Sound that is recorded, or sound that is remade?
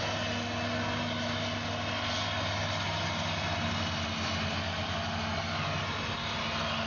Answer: recorded